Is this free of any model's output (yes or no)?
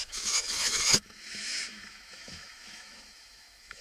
no